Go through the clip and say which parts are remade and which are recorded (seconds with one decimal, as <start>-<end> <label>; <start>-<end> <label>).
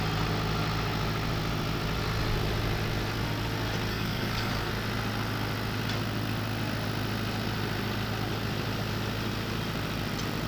0.0-3.9 recorded; 3.9-4.7 remade; 4.7-10.5 recorded